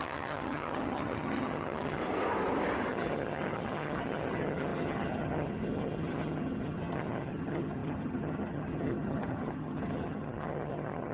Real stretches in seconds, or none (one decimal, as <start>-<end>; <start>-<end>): 2.0-2.9